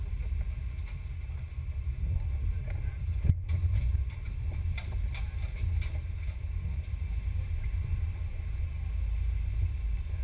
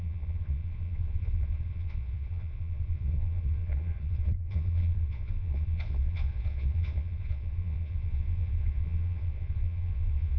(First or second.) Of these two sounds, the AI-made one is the second